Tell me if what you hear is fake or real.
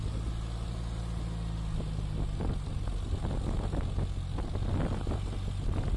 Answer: real